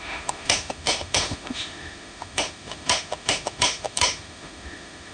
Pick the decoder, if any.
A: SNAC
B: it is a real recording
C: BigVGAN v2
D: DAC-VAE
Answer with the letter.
D